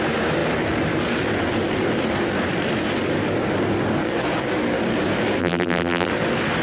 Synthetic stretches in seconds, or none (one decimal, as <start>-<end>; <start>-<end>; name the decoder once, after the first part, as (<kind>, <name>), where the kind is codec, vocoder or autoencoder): 5.4-6.1 (vocoder, BigVGAN v2)